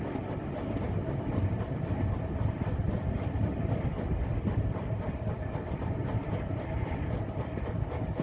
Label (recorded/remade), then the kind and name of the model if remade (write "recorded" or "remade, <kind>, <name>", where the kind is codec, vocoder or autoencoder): recorded